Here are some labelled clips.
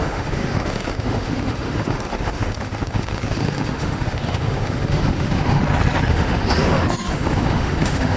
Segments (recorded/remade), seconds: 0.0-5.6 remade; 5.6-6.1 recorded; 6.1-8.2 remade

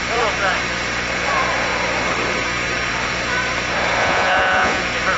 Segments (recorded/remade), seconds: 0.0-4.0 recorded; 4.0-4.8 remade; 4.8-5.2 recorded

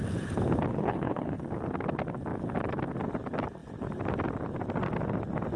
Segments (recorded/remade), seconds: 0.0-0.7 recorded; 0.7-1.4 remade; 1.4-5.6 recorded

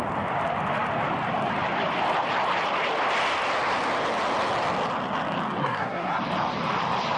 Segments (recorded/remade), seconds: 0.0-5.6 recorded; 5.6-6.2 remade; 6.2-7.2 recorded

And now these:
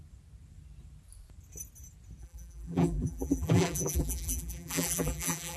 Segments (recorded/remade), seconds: 0.0-2.2 recorded; 2.2-5.6 remade

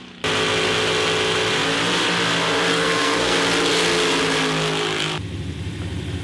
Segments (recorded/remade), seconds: 0.0-2.7 recorded; 2.7-3.4 remade; 3.4-6.2 recorded

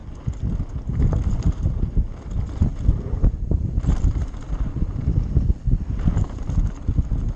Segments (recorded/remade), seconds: 0.0-2.7 recorded; 2.7-5.8 remade; 5.8-7.4 recorded

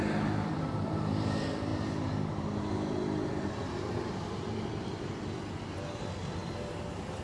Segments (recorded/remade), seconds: 0.0-1.7 remade; 1.7-6.0 recorded; 6.0-6.4 remade; 6.4-7.2 recorded